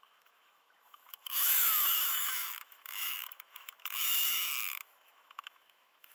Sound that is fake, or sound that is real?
fake